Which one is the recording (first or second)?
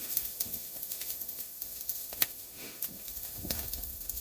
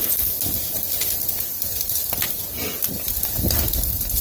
second